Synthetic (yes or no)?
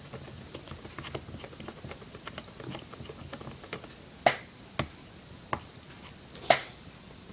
no